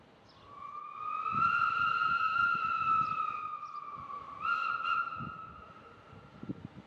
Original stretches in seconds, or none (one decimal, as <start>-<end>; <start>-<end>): 0.0-1.3; 1.9-6.9